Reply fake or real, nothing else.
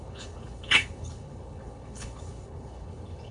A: fake